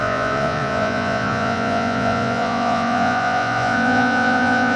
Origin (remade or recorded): remade